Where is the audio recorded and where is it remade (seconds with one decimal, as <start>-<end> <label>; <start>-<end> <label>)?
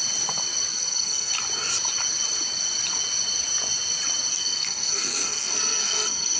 0.0-0.7 recorded; 0.7-1.3 remade; 1.3-4.3 recorded; 4.3-6.4 remade